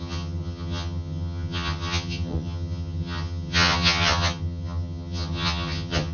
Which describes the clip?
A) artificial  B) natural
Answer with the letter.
A